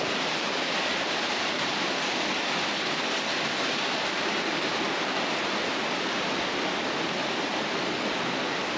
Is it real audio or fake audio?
real